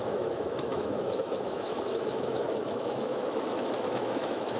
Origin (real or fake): fake